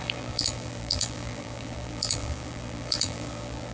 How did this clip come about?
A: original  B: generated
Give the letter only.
B